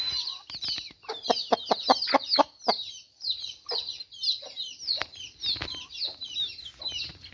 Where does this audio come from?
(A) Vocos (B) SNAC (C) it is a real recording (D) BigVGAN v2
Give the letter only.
C